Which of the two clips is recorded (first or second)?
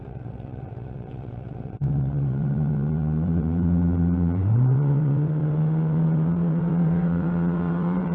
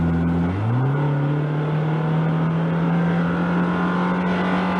second